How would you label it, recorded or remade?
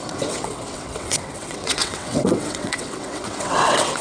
remade